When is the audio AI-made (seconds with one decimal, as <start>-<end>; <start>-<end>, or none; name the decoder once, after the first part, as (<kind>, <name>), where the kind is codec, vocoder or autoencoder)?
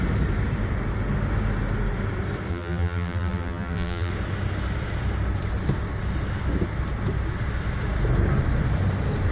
2.5-4.1 (vocoder, BigVGAN v2)